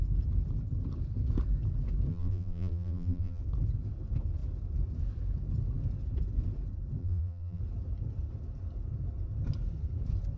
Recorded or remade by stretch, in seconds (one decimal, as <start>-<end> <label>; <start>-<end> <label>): 0.0-2.1 recorded; 2.1-3.4 remade; 3.4-7.0 recorded; 7.0-7.6 remade; 7.6-10.4 recorded